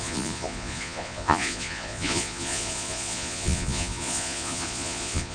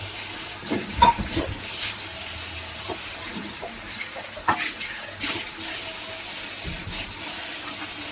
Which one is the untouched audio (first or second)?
second